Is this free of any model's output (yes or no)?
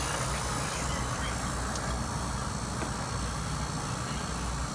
yes